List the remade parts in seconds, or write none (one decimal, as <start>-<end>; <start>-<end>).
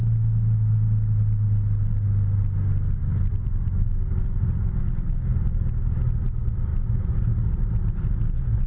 3.0-4.8